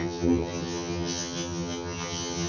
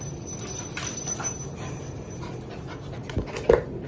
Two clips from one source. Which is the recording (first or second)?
second